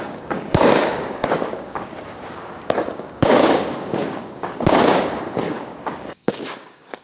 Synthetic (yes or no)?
yes